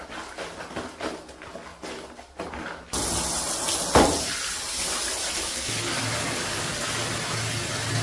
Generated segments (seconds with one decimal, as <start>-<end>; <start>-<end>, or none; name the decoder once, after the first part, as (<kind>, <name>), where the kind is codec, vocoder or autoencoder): 5.4-6.7 (codec, DAC)